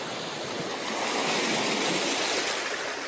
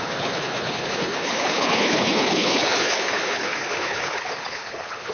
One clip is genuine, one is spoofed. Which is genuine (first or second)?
first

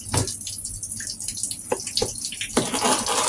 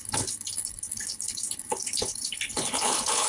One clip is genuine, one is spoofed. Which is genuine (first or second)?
first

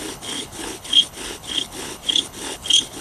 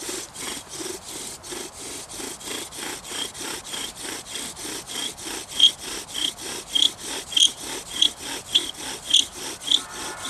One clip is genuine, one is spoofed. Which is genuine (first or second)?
second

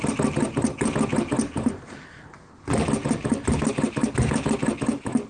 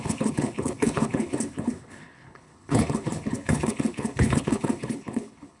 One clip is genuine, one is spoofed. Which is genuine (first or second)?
first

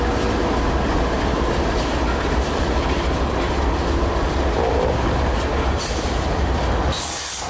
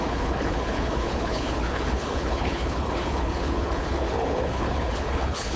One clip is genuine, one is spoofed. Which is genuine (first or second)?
first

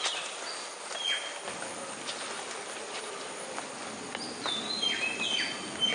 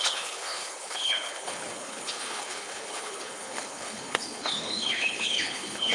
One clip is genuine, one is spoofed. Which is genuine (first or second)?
first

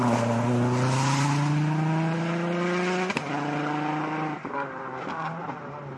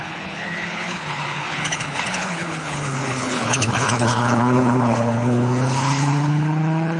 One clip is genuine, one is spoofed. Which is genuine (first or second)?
first